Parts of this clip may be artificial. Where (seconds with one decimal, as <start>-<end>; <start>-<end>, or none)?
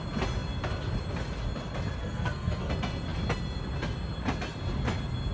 2.0-2.7